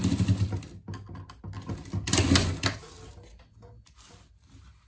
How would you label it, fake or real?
real